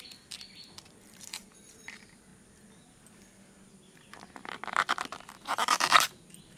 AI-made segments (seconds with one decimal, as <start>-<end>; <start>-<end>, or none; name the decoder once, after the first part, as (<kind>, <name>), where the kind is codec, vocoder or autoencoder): 0.0-2.3 (vocoder, BigVGAN v2); 5.1-6.6